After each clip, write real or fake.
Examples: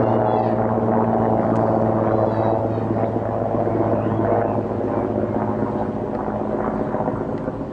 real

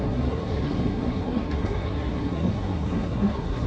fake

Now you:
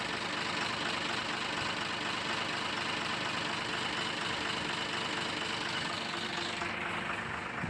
real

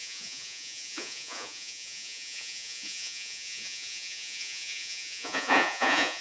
fake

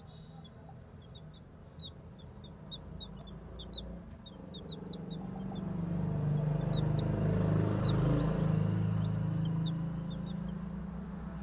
real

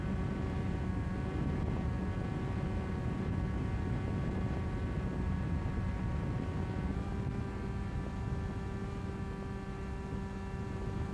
real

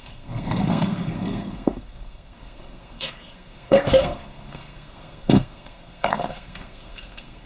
fake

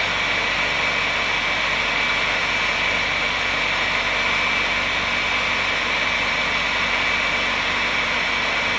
real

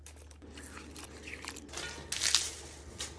real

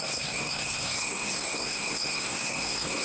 fake